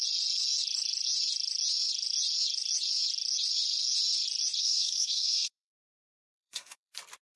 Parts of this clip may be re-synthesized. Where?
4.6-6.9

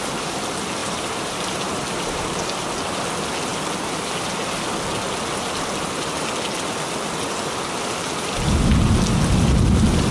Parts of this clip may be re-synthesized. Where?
0.8-2.4

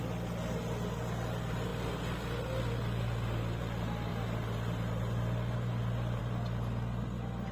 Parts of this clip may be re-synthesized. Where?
none

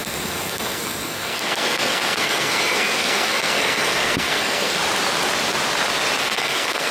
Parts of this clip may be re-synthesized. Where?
0.0-4.8; 6.2-6.9

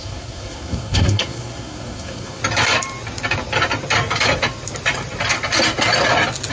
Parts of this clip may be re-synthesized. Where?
0.0-2.4

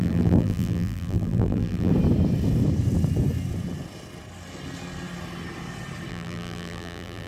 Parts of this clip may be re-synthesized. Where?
0.0-1.9; 6.1-7.3

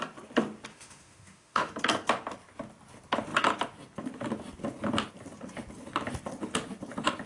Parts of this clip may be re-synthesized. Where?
0.7-1.7